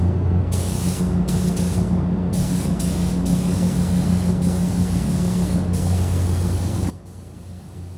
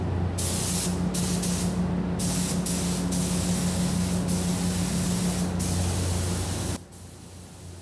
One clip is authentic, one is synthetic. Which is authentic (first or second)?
second